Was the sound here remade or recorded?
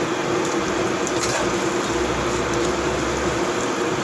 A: recorded